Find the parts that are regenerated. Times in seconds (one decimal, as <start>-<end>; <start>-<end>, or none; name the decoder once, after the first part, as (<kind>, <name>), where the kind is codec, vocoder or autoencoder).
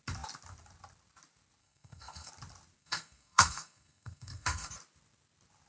1.6-2.3 (codec, SNAC); 2.8-4.7